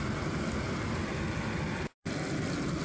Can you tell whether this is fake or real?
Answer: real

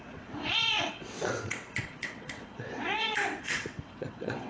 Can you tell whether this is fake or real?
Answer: fake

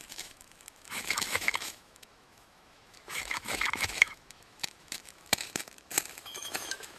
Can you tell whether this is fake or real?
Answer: fake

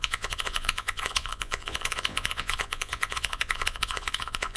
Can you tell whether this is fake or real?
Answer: fake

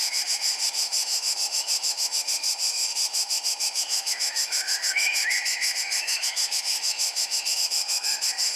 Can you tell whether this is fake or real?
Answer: fake